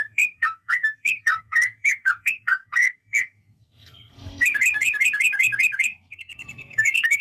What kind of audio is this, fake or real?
fake